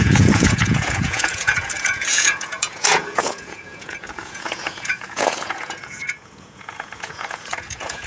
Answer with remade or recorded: remade